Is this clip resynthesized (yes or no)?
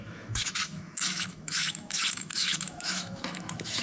yes